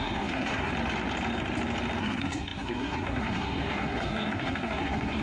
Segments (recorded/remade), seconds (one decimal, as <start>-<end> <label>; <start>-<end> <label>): 0.0-0.7 remade; 0.7-2.0 recorded; 2.0-5.2 remade